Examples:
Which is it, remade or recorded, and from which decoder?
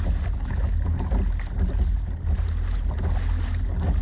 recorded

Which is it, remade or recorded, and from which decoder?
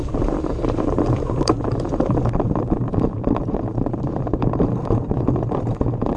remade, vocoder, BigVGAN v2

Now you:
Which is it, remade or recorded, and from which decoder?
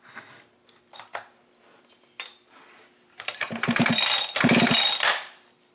remade, vocoder, BigVGAN v2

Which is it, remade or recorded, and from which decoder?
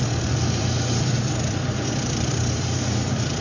remade, vocoder, BigVGAN v2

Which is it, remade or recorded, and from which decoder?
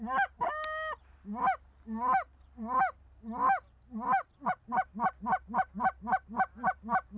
recorded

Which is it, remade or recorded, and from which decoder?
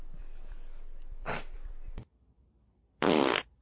remade, vocoder, BigVGAN v2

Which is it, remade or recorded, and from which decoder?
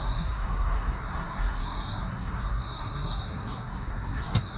remade, codec, SNAC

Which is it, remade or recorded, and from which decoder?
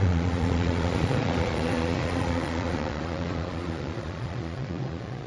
remade, vocoder, Vocos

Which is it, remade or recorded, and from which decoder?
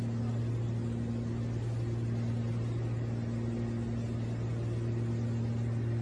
recorded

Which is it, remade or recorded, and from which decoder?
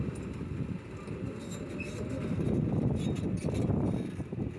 remade, vocoder, BigVGAN v2